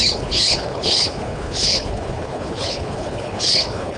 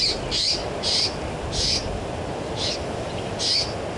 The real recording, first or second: second